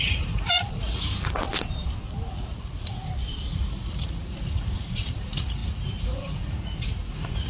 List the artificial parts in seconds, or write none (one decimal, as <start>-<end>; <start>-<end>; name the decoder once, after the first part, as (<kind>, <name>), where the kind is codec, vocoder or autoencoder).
0.0-1.1 (vocoder, Vocos); 2.3-3.0; 3.5-7.5